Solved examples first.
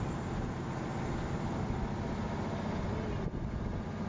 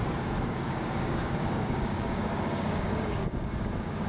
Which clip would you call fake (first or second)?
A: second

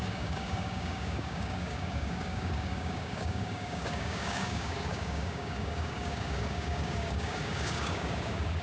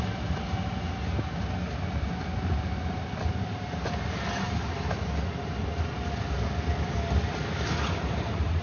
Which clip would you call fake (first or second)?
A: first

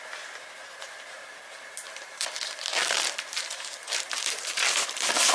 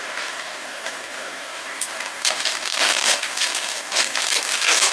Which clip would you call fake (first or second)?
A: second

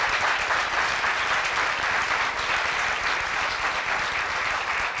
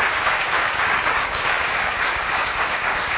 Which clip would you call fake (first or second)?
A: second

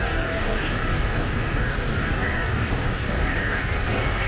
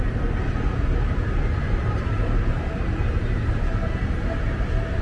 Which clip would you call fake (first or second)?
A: first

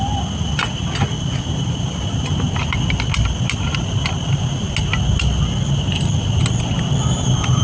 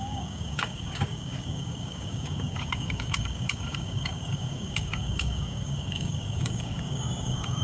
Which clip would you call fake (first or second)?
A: second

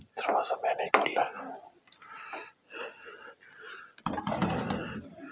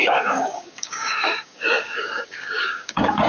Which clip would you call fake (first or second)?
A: second